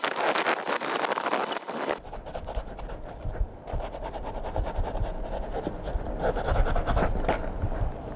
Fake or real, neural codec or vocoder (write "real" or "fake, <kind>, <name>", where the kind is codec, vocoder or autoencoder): real